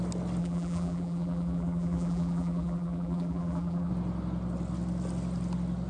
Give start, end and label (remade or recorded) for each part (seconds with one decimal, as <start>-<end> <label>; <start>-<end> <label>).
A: 0.0-0.4 recorded; 0.4-3.9 remade; 3.9-5.9 recorded